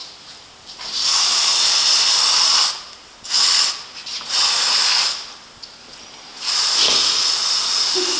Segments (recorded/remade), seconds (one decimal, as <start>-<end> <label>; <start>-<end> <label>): 0.0-8.2 recorded